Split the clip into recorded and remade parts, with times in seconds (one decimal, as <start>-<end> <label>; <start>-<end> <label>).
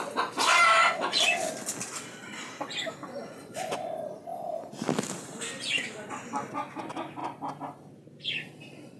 0.0-3.2 recorded; 3.2-3.9 remade; 3.9-9.0 recorded